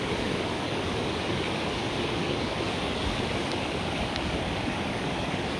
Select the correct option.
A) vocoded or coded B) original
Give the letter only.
A